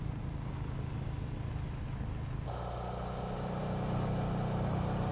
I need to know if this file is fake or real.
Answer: real